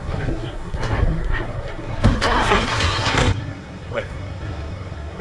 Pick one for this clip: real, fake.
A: fake